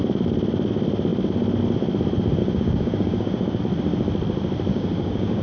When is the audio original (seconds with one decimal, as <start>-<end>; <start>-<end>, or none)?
0.0-2.4; 3.6-4.7